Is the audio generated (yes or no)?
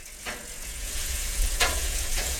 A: yes